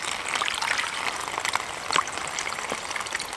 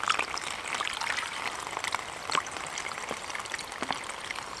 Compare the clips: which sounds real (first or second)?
first